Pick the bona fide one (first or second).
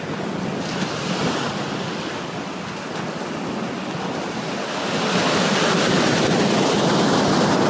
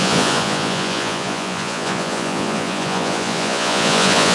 first